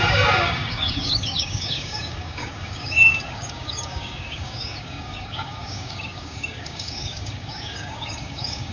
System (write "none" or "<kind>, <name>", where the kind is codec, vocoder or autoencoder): codec, DAC